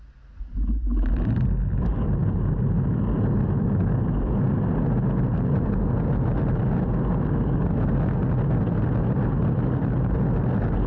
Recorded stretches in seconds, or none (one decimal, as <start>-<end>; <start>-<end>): 0.0-10.9